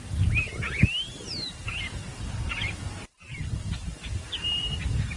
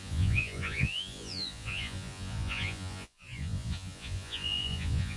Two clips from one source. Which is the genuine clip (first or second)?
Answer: first